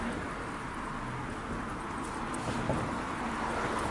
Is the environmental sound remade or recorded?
recorded